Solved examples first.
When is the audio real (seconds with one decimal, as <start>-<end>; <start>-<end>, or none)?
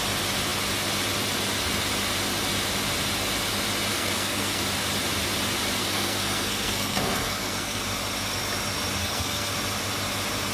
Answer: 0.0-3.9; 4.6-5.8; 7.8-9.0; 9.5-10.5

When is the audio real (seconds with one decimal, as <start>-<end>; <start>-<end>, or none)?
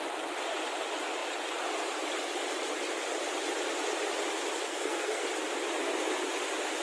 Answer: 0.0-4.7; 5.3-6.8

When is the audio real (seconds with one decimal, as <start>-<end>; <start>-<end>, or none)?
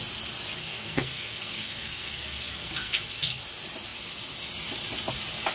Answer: 0.0-0.6; 3.4-5.5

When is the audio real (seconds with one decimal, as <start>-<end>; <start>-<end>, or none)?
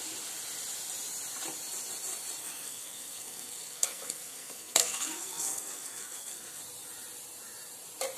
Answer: 0.0-2.4; 6.6-8.2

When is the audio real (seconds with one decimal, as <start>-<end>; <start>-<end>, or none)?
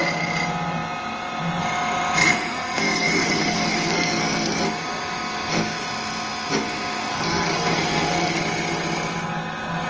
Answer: 0.0-2.2; 4.6-7.1; 8.4-9.9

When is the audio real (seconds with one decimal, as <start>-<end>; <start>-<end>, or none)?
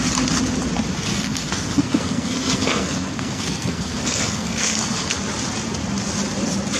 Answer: 0.0-1.1; 5.2-6.8